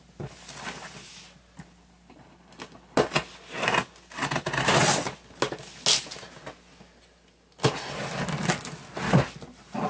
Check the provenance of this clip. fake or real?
real